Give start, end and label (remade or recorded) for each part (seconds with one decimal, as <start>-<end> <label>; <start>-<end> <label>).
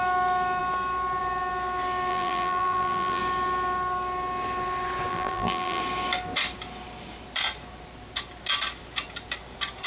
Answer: 0.0-2.1 recorded; 2.1-3.2 remade; 3.2-5.1 recorded; 5.1-5.8 remade; 5.8-9.9 recorded